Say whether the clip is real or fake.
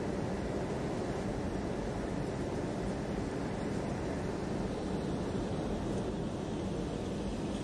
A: real